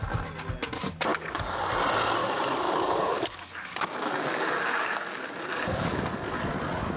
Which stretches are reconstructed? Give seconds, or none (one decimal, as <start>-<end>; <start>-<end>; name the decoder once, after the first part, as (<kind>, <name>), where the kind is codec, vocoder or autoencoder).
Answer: 1.1-1.6 (codec, DAC); 2.2-6.4